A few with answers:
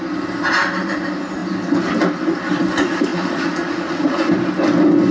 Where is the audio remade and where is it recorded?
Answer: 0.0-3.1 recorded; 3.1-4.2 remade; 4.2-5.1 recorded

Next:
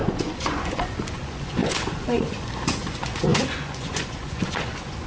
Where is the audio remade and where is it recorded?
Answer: 0.0-5.1 remade

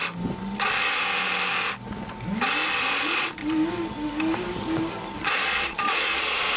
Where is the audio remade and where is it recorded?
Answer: 0.0-2.9 recorded; 2.9-3.4 remade; 3.4-5.2 recorded; 5.2-6.6 remade

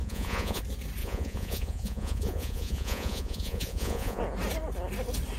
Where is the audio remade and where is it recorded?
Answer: 0.0-0.6 remade; 0.6-1.0 recorded; 1.0-4.2 remade; 4.2-5.4 recorded